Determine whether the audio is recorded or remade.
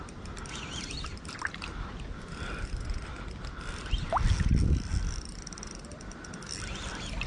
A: recorded